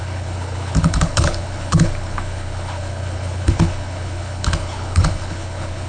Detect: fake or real fake